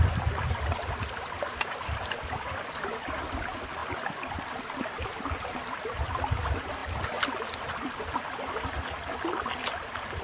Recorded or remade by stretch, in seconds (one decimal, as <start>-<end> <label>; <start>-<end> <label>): 0.0-10.2 recorded